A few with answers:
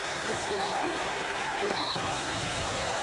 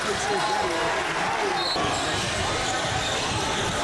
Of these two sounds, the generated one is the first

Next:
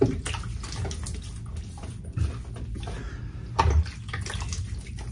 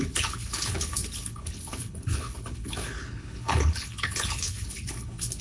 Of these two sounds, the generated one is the second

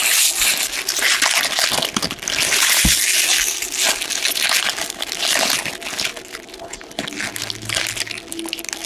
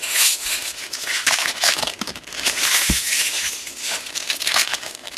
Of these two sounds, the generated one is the second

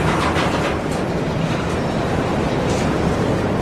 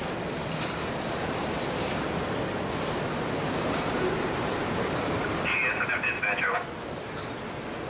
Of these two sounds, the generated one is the first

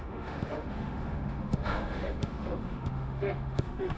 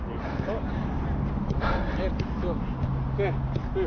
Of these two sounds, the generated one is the first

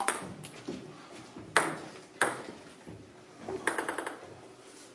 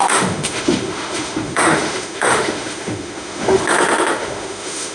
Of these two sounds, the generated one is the second